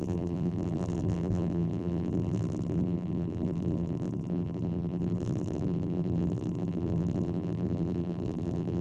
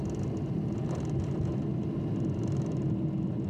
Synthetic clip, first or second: first